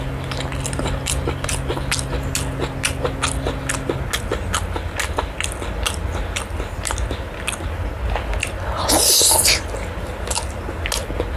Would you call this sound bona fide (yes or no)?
yes